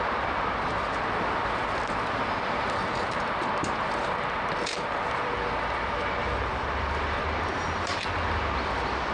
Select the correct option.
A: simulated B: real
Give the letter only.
A